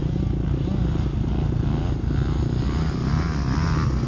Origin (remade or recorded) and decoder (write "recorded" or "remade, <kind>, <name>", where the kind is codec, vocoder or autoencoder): recorded